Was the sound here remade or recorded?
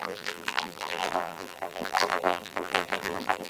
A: remade